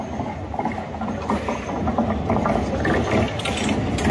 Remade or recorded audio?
recorded